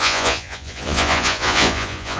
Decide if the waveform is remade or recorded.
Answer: remade